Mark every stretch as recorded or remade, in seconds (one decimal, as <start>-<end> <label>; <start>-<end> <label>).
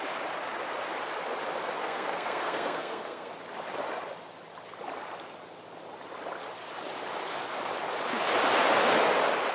0.0-1.8 recorded; 1.8-3.3 remade; 3.3-9.5 recorded